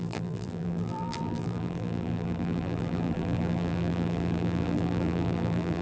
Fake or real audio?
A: fake